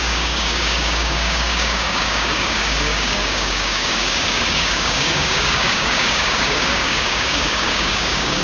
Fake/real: fake